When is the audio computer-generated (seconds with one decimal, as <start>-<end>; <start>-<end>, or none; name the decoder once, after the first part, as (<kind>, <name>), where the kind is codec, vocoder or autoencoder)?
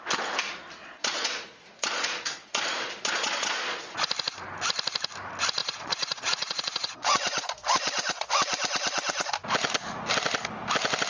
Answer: 0.8-4.1 (vocoder, Vocos); 5.6-8.3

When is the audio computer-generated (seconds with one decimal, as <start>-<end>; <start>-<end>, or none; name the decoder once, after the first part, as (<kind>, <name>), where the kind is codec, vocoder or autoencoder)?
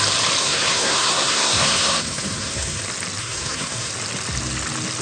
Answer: 0.4-2.8 (codec, SNAC); 3.2-3.9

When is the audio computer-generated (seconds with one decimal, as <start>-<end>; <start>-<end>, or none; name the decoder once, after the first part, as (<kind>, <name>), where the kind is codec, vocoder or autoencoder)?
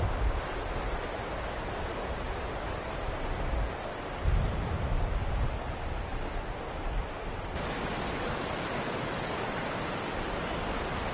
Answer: none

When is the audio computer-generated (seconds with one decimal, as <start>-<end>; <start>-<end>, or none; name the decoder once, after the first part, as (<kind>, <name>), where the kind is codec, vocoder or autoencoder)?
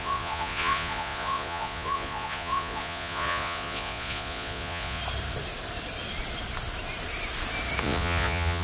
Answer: 0.0-5.0 (vocoder, Vocos); 7.8-8.6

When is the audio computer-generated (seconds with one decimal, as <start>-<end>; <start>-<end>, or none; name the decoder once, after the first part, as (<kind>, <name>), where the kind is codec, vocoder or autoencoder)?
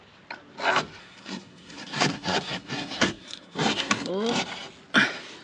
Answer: 1.0-4.1 (codec, SNAC)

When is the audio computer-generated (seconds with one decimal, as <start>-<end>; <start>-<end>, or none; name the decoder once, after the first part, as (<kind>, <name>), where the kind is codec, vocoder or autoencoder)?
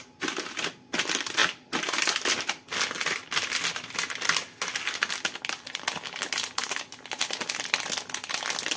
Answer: none